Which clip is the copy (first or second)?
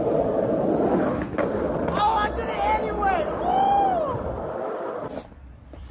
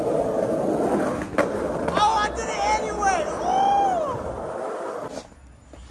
first